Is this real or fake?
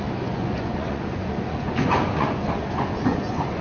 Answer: fake